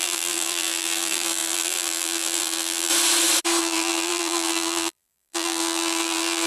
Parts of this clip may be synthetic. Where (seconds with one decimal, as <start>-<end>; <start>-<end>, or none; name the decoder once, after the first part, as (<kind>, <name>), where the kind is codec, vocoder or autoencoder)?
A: 0.0-2.9 (vocoder, BigVGAN v2); 3.6-6.5